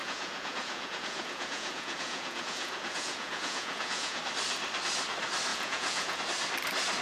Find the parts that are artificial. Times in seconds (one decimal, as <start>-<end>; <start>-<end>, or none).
0.0-4.2; 5.5-6.2

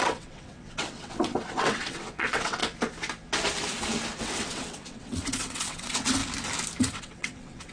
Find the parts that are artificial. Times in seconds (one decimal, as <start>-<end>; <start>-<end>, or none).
0.0-2.6; 4.2-6.2; 6.8-7.7